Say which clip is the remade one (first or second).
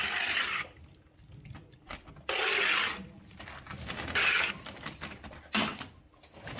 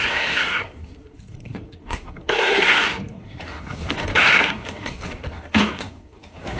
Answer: second